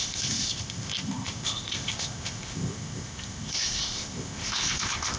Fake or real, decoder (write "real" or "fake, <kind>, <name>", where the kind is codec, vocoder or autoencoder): fake, codec, ZipCodec